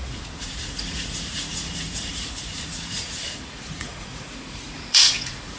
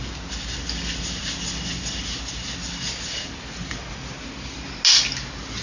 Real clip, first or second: second